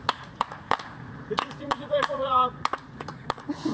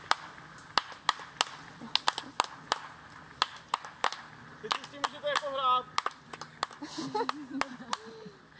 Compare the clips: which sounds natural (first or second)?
second